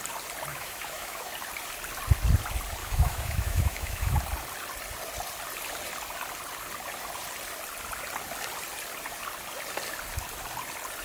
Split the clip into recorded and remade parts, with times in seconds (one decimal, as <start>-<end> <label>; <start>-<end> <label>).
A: 0.0-0.5 recorded; 0.5-1.3 remade; 1.3-2.8 recorded; 2.8-4.2 remade; 4.2-11.0 recorded